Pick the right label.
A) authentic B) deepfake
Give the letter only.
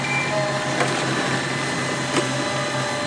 A